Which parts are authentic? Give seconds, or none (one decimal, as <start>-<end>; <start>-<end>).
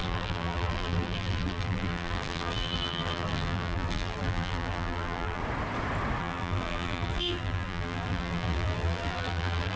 5.4-6.2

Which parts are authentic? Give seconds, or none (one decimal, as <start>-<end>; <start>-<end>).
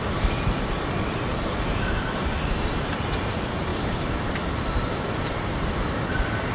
0.0-3.7; 4.3-6.5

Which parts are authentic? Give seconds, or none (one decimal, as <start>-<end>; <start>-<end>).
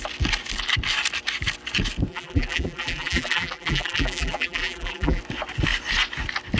0.0-2.1; 5.2-6.6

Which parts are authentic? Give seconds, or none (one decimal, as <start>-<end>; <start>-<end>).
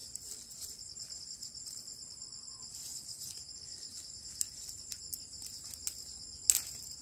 2.5-7.0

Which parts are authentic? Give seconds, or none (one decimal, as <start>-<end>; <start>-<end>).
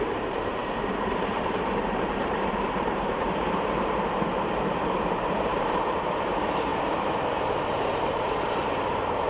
6.7-7.6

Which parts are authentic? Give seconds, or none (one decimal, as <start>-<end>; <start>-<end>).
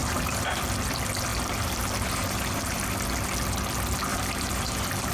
0.6-1.3; 2.9-4.1